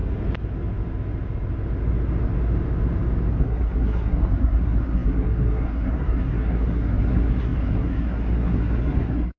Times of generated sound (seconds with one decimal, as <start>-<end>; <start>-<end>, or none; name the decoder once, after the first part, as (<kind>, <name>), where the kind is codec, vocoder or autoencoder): 3.4-9.4 (codec, SNAC)